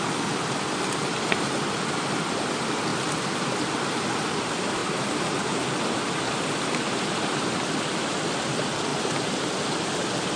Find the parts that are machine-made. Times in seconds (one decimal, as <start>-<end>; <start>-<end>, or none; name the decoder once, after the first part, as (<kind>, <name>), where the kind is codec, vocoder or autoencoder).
4.8-5.7 (vocoder, BigVGAN v2); 8.9-9.5